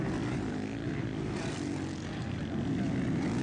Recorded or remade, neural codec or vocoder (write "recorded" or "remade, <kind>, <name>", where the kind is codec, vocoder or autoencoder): recorded